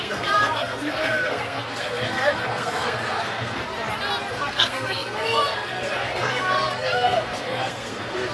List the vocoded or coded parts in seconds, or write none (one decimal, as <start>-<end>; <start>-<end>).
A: 0.0-3.6; 4.3-8.3